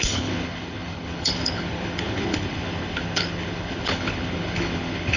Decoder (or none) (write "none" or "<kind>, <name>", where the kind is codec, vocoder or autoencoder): codec, HILCodec